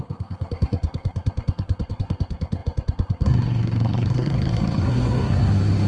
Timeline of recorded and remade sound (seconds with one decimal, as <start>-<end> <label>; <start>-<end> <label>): 0.0-5.9 remade